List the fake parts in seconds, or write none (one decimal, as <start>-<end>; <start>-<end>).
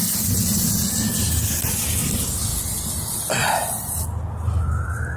none